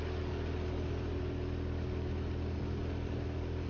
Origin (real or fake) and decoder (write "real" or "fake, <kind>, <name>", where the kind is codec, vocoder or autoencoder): real